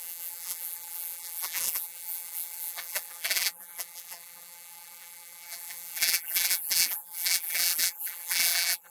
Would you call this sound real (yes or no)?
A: no